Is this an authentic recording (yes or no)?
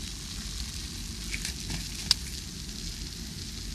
yes